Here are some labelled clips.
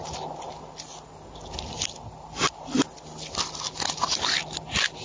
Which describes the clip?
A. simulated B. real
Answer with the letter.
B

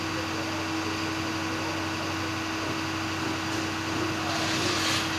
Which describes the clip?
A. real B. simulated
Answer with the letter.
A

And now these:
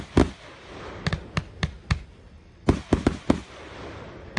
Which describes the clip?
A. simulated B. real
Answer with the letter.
B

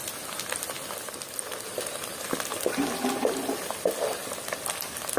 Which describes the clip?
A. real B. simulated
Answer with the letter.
A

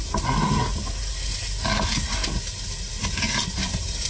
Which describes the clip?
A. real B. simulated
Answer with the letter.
A